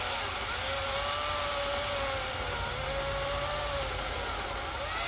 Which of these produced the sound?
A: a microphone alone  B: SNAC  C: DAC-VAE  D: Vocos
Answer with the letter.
A